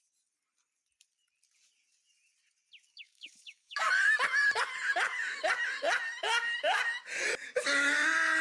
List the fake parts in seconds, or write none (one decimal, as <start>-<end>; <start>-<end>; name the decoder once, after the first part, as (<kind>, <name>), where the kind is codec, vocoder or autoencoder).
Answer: 2.9-3.9 (codec, DAC)